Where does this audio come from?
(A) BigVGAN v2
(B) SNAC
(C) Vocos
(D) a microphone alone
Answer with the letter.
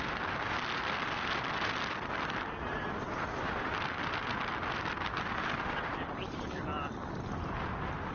D